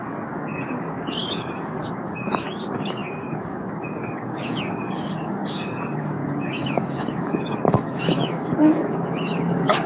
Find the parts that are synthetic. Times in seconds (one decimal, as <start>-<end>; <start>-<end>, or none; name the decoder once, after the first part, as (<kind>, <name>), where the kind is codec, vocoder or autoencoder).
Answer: 0.0-9.9 (codec, DAC)

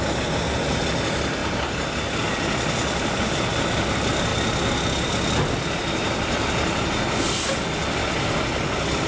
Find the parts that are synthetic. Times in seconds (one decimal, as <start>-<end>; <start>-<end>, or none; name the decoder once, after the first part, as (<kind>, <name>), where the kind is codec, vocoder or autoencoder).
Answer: none